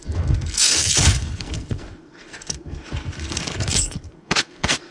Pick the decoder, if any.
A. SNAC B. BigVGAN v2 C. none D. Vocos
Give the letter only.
A